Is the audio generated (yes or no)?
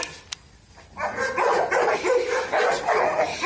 no